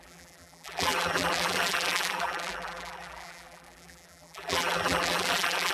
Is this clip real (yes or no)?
no